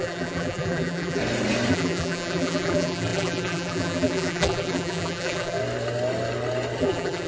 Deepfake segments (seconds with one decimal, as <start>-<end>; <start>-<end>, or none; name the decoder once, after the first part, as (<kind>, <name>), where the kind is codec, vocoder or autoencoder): 0.0-1.2 (vocoder, BigVGAN v2); 1.7-5.6; 6.8-7.3

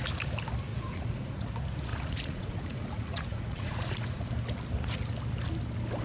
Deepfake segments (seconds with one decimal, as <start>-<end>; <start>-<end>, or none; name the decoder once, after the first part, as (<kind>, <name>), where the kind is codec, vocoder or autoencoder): 0.7-1.5 (vocoder, Vocos); 1.9-4.3

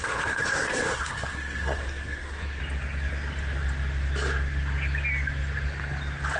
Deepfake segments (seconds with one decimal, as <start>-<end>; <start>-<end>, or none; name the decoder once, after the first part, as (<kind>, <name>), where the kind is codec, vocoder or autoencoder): 0.0-2.6 (codec, SNAC)

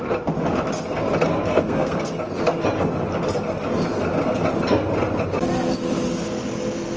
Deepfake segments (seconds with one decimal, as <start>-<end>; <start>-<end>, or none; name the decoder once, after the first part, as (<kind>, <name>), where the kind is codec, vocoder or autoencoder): 1.5-2.1 (codec, SNAC)

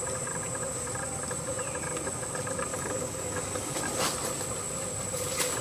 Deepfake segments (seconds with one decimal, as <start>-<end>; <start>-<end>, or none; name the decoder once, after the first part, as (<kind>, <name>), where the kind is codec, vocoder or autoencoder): 2.7-3.8 (codec, DAC)

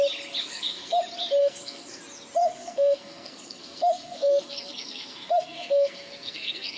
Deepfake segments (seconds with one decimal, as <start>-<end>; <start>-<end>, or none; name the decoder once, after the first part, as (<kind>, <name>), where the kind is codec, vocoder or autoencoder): 0.4-1.0 (codec, SNAC); 1.4-2.0; 2.4-6.8